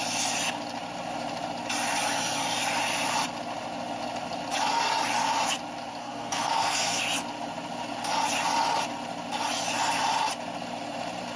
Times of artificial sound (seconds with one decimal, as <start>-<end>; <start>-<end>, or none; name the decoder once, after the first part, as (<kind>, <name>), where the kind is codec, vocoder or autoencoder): 6.0-7.0 (codec, SNAC)